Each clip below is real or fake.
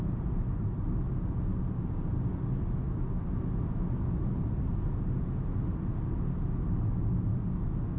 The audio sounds real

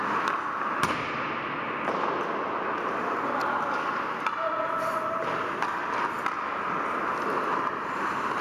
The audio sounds real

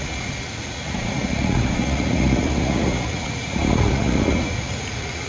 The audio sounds fake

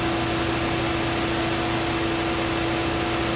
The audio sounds real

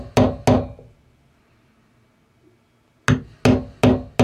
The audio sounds real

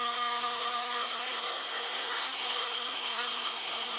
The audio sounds fake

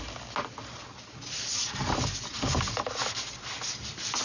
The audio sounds real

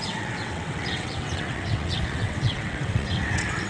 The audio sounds fake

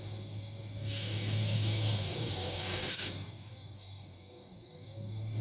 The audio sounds fake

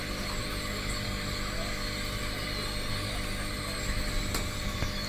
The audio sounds real